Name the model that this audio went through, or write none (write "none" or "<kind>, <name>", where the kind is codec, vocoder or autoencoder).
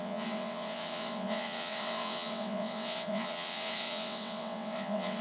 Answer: vocoder, WaveNeXt